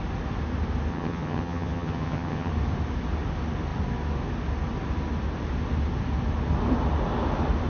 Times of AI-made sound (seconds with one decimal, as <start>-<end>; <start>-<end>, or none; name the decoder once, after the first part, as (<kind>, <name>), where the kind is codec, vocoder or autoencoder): 0.9-2.5 (vocoder, HiFi-GAN)